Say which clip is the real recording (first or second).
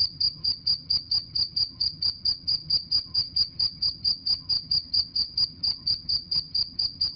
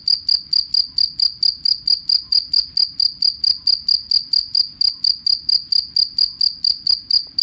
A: second